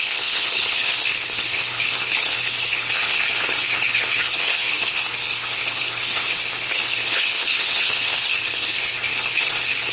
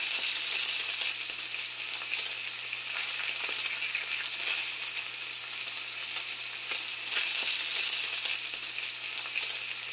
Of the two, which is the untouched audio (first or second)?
second